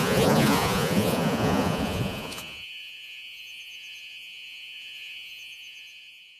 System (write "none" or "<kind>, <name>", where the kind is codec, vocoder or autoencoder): vocoder, Vocos